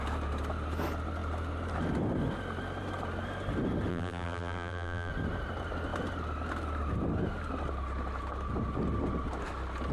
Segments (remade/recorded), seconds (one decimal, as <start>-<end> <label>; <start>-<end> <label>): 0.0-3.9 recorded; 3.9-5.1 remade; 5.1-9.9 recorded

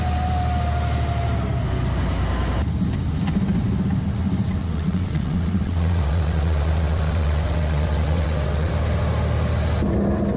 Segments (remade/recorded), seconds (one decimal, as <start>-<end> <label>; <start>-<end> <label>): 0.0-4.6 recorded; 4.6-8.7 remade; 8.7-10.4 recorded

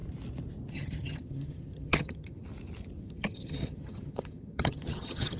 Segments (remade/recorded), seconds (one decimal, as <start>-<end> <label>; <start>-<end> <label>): 0.0-0.7 recorded; 0.7-2.4 remade; 2.4-3.0 recorded; 3.0-5.4 remade